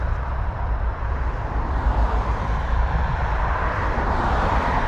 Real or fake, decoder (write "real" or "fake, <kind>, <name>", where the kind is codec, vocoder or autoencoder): fake, vocoder, BigVGAN v2